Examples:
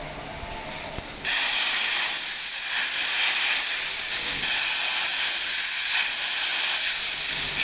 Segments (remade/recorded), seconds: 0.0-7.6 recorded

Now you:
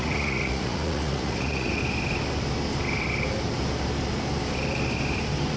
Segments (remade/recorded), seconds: 0.0-1.8 remade; 1.8-5.6 recorded